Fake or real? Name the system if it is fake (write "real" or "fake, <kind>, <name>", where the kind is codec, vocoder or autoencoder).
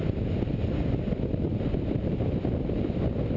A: real